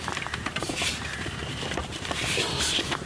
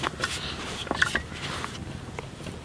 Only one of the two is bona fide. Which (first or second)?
second